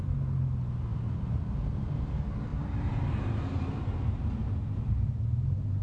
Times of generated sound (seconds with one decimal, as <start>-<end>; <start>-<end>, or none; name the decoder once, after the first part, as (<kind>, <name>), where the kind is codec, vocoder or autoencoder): 0.9-1.4 (vocoder, BigVGAN v2); 2.5-5.1